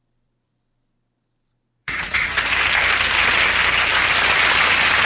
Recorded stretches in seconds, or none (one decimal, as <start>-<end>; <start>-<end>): 0.0-1.8; 2.5-5.1